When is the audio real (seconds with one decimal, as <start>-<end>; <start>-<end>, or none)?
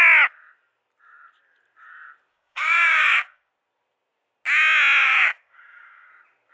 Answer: 0.0-2.3; 3.5-5.0; 6.1-6.5